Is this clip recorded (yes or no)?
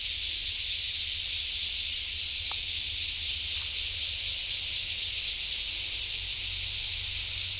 yes